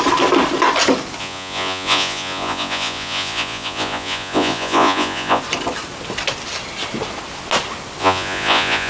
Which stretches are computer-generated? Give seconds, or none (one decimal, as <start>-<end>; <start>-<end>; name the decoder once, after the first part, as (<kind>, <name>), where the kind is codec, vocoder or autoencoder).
1.2-5.4 (vocoder, Vocos); 8.0-8.9

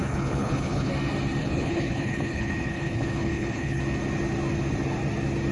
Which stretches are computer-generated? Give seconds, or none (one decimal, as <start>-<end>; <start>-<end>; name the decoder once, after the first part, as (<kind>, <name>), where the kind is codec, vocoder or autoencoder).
0.0-0.9 (codec, HILCodec); 1.4-3.8

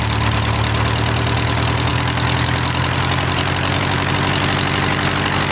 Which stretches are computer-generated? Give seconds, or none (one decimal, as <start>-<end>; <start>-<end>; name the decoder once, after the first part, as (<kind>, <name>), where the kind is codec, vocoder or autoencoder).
1.9-4.1 (vocoder, BigVGAN v2)

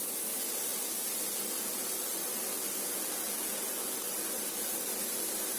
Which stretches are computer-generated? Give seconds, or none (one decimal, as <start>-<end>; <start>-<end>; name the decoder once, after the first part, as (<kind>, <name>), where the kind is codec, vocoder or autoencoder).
none

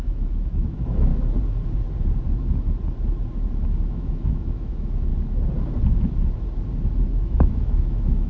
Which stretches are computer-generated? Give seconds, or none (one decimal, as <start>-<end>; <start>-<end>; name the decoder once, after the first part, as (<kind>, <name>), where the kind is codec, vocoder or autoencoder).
0.0-1.1 (autoencoder, DAC-VAE); 3.9-5.1; 7.1-8.3

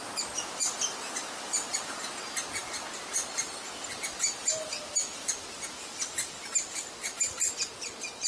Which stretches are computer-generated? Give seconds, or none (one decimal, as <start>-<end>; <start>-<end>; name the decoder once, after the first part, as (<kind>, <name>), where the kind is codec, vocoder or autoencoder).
5.9-7.5 (vocoder, BigVGAN v2)

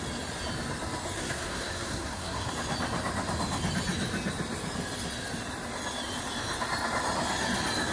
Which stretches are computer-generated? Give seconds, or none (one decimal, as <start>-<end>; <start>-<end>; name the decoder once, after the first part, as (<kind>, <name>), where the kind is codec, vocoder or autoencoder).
1.2-2.5 (codec, SNAC)

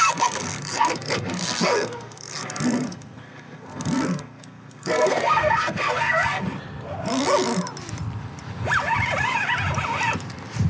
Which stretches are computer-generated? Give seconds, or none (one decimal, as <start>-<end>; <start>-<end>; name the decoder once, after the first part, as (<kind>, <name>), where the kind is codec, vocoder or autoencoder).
0.0-6.4 (codec, SNAC)